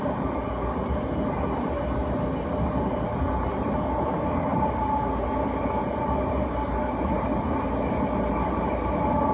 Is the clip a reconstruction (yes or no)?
no